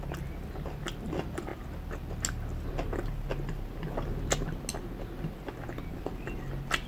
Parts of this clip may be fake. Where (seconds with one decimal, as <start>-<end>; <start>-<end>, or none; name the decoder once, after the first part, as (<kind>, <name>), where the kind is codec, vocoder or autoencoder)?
none